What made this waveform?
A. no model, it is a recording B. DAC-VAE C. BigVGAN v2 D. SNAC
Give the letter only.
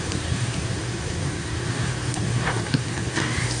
D